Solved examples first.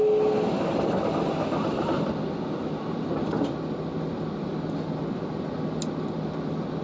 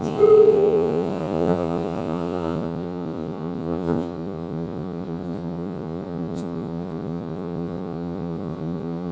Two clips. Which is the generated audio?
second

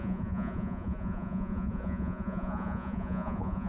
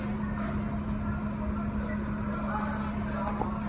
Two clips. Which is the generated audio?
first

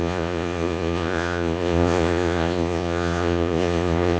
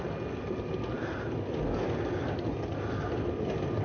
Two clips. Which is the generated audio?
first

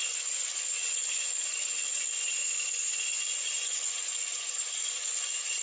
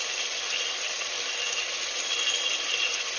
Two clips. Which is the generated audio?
first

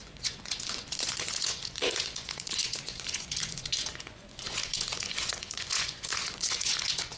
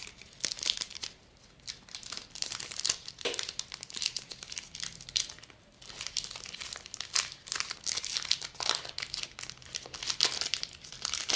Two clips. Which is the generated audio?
first